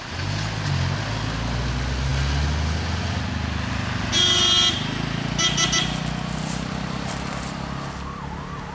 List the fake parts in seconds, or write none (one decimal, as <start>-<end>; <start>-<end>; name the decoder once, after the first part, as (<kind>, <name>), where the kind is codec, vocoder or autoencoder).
none